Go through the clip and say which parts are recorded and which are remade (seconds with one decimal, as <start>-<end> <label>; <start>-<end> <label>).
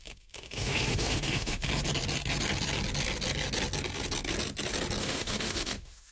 0.0-1.7 remade; 1.7-5.0 recorded; 5.0-6.1 remade